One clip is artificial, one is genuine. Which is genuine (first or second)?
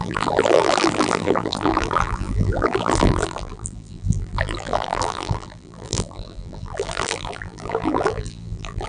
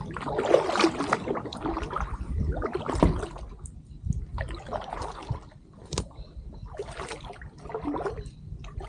second